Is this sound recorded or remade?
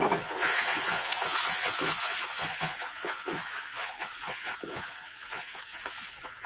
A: remade